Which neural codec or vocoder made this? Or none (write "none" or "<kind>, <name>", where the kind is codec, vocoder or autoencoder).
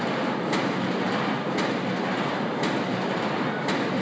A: none